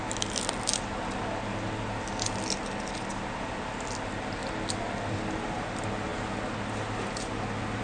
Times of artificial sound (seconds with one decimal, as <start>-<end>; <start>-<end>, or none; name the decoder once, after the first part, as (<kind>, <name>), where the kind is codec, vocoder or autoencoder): none